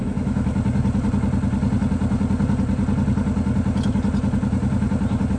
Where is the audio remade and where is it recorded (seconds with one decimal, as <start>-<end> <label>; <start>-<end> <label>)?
0.0-0.5 remade; 0.5-5.4 recorded